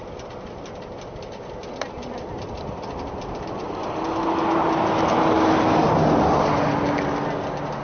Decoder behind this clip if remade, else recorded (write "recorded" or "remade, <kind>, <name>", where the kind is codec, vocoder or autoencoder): recorded